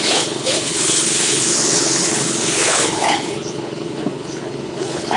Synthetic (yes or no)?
yes